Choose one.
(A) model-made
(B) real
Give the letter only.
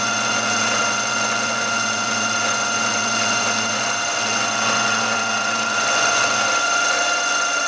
A